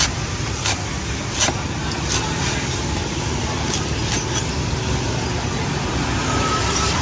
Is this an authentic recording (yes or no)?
yes